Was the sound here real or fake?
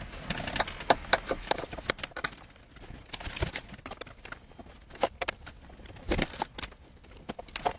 real